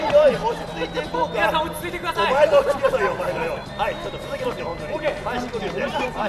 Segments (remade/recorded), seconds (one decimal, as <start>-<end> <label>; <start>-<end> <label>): 0.0-0.4 remade; 0.4-2.1 recorded; 2.1-3.6 remade; 3.6-4.1 recorded; 4.1-4.7 remade; 4.7-5.6 recorded; 5.6-6.3 remade